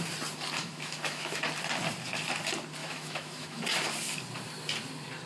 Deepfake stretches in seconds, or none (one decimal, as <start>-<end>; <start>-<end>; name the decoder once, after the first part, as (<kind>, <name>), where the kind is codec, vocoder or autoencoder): 0.6-1.5 (autoencoder, DAC-VAE); 2.8-3.6